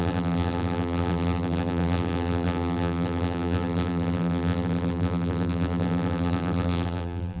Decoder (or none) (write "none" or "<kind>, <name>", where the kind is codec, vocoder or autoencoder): vocoder, BigVGAN v2